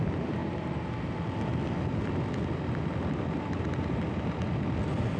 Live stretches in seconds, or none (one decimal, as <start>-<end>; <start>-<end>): 0.0-0.4; 0.9-5.2